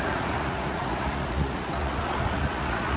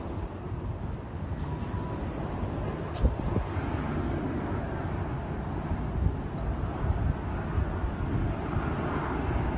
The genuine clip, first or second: second